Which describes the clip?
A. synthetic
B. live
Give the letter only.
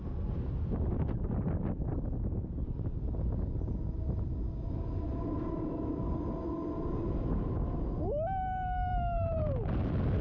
B